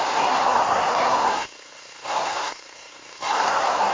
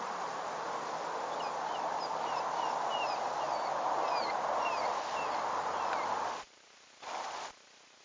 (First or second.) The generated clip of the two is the first